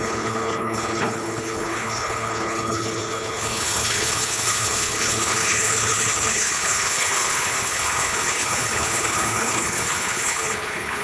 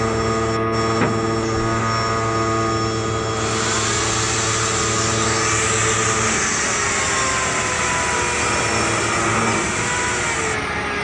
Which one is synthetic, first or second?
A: first